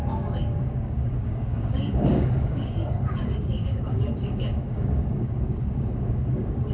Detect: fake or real fake